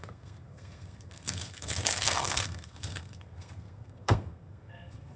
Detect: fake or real fake